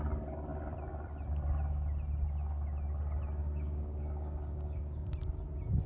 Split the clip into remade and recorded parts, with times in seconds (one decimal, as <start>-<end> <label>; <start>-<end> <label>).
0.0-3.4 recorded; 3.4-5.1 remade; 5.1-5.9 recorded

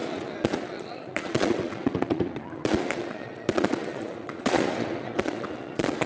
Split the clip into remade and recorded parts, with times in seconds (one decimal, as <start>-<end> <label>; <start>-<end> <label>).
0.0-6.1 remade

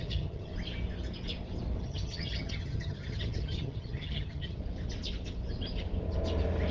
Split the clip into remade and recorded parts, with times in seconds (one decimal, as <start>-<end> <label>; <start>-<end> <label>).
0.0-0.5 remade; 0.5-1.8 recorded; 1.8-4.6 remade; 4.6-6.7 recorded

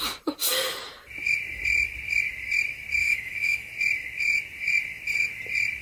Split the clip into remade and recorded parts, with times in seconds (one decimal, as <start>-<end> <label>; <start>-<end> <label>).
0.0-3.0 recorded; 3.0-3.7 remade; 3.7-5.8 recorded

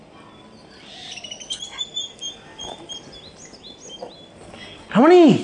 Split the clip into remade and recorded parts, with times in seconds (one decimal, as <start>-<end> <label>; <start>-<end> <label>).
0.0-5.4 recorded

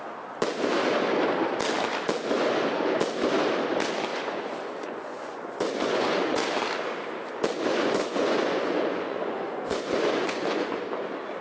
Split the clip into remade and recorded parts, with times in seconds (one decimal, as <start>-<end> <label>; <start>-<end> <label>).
0.0-4.1 recorded; 4.1-6.4 remade; 6.4-7.7 recorded; 7.7-10.8 remade; 10.8-11.4 recorded

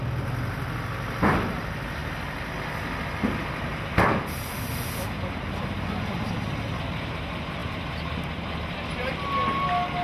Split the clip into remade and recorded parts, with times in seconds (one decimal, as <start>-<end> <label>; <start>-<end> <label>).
0.0-10.0 recorded